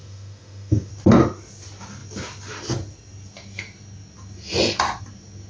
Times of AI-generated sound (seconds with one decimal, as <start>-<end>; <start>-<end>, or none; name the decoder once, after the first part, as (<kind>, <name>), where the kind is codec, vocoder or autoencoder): 0.0-0.9 (autoencoder, DAC-VAE)

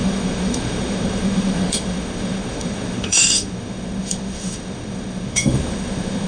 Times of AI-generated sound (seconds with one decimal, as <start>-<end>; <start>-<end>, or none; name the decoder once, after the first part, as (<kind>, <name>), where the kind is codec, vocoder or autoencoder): 0.0-6.3 (autoencoder, DAC-VAE)

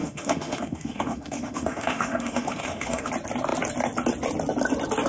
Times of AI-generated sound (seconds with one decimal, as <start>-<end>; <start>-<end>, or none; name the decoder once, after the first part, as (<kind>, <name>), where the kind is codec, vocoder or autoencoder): 0.0-3.1 (autoencoder, DAC-VAE)

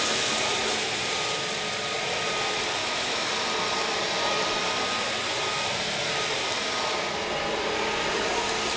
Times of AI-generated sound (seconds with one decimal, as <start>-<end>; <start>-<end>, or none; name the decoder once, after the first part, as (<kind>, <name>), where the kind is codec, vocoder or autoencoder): 2.8-3.3 (autoencoder, DAC-VAE)

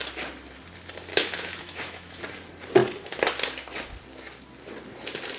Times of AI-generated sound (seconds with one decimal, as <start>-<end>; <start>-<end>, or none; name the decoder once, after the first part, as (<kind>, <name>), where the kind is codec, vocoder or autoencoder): 1.1-2.2 (autoencoder, DAC-VAE)

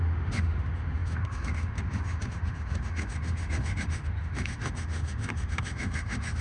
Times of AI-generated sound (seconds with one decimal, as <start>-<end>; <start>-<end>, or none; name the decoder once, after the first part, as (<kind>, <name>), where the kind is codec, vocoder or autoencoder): 0.0-6.4 (autoencoder, DAC-VAE)

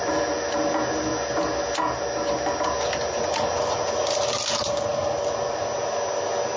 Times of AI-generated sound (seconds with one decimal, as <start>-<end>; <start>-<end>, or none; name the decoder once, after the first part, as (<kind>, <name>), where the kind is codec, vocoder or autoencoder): none

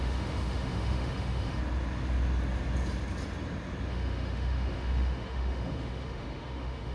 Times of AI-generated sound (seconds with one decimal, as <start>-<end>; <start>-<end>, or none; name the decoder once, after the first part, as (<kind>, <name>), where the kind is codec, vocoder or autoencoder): 0.0-1.6 (autoencoder, DAC-VAE); 3.9-6.9